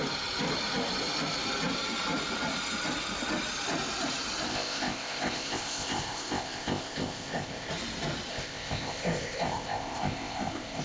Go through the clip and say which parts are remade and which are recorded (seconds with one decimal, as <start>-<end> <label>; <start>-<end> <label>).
0.0-4.5 recorded; 4.5-7.7 remade; 7.7-8.3 recorded; 8.3-10.8 remade